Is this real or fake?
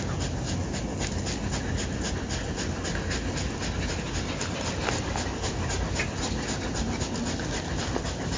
real